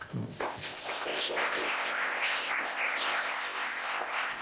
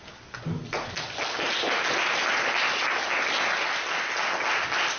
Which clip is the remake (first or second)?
first